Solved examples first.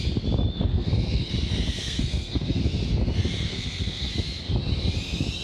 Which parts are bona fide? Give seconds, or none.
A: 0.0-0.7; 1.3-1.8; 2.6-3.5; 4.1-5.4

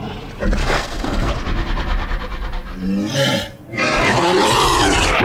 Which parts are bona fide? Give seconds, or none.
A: 0.0-0.6; 1.3-5.2

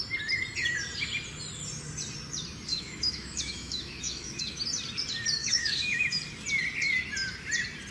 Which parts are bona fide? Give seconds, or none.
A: 0.0-2.7; 4.6-5.4; 6.2-7.9

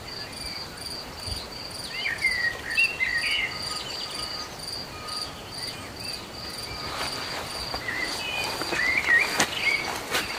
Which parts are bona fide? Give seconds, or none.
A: 0.0-10.4

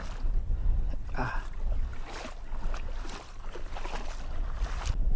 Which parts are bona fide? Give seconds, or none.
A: 0.0-5.2

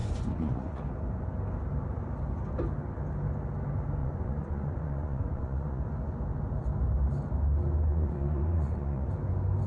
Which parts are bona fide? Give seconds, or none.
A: 0.8-4.0; 5.8-7.9; 9.1-9.7

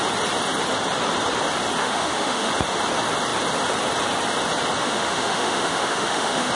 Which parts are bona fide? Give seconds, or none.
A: 0.0-1.8; 2.5-4.8